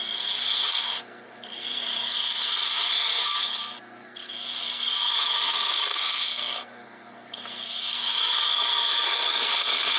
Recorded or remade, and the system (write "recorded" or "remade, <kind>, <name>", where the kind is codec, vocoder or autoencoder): remade, codec, SNAC